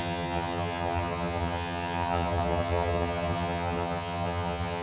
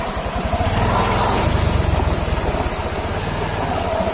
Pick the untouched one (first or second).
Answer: second